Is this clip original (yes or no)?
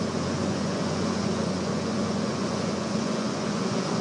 no